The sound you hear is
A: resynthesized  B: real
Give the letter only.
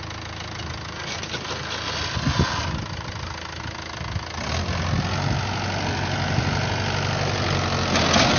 B